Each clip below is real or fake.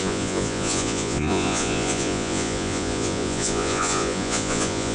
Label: fake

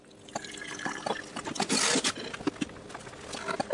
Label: real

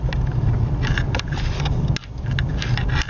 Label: real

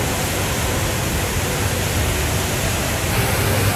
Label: real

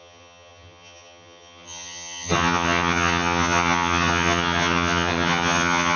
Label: fake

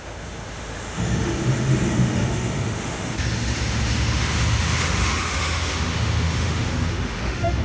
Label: fake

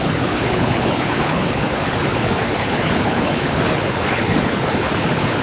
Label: fake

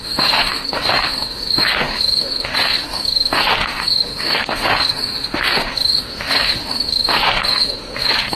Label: fake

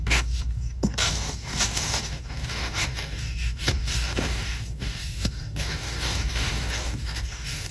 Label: fake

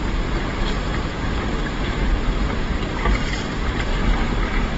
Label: fake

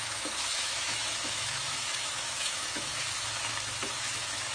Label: fake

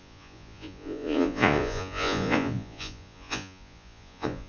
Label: fake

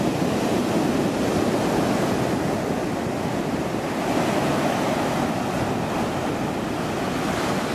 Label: real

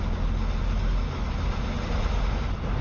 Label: real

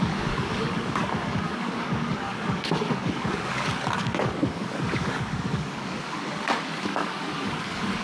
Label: fake